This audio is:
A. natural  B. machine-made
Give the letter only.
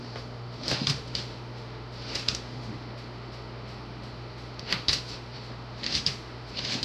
B